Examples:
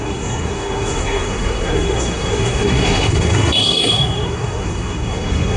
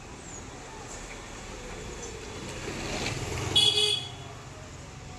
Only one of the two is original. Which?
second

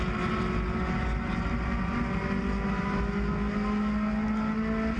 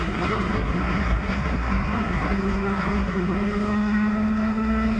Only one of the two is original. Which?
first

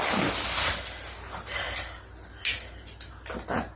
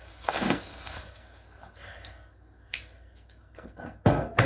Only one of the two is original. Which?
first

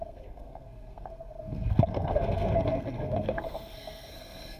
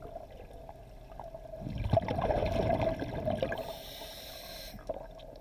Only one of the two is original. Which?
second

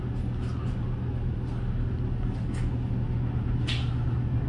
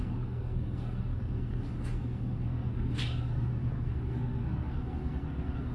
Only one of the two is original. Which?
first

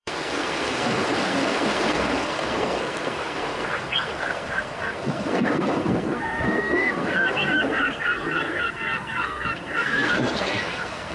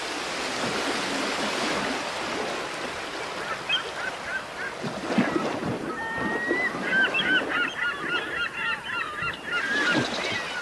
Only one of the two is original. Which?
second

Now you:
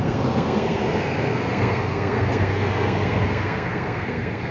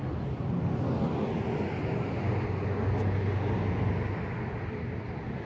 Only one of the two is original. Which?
second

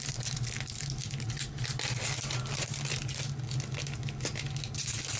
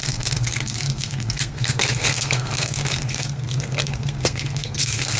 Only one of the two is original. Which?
first